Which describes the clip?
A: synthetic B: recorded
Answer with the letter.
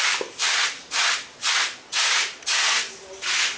B